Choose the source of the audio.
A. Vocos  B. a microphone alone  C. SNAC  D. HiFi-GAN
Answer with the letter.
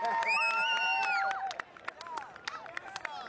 B